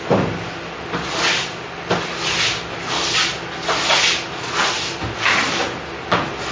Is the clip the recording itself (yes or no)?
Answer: yes